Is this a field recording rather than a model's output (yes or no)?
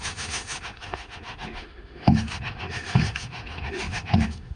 no